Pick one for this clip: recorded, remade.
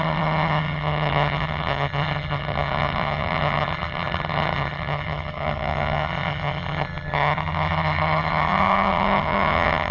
remade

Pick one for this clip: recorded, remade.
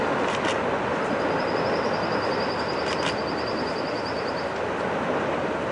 recorded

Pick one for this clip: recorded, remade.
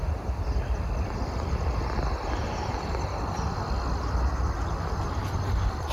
recorded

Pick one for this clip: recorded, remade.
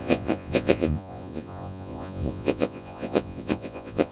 remade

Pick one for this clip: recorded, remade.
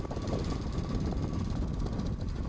remade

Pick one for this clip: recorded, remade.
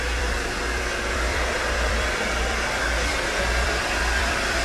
remade